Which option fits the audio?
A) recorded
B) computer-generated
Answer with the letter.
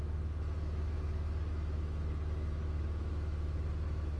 B